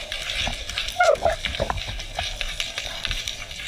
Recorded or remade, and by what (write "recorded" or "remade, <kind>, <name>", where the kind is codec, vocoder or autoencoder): recorded